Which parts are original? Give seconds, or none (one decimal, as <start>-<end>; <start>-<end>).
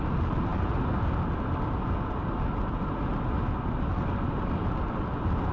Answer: 0.0-5.5